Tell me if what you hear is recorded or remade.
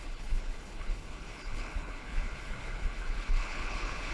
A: remade